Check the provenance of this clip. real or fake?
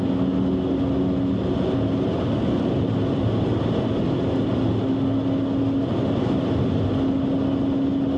real